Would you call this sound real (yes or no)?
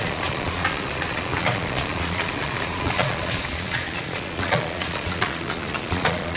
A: no